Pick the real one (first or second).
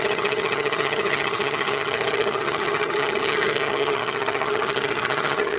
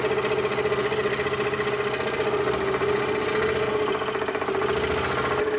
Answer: second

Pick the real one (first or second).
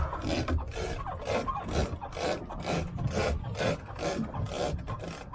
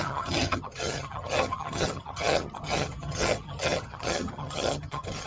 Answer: first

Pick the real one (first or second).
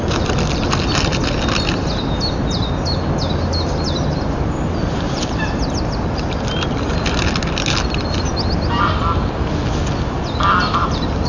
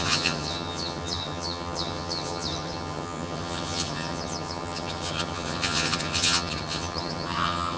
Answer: first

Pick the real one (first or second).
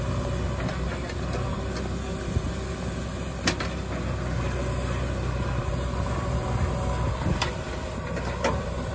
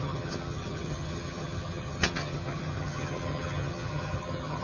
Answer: first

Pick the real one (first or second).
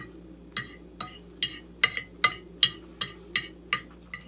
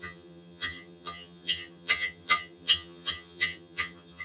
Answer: first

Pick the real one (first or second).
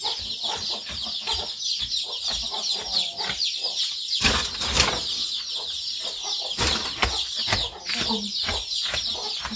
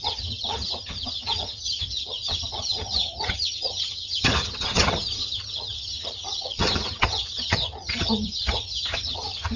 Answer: first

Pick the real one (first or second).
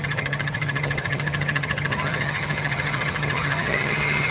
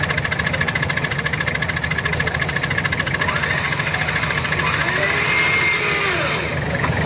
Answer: second